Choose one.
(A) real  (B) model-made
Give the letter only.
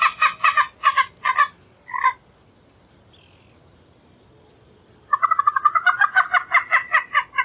A